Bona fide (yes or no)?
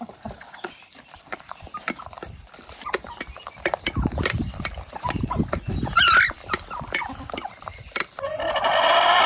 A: no